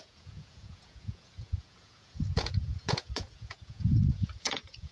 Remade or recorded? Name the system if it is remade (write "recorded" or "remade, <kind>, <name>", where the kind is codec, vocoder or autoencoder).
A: remade, vocoder, Vocos